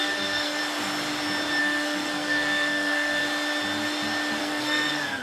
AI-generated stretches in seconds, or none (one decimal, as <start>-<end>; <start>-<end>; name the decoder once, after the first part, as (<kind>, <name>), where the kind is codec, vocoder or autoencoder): 0.0-0.6 (codec, SNAC); 1.6-3.2; 4.4-5.2